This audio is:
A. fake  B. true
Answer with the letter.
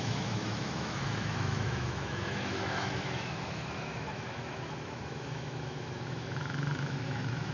A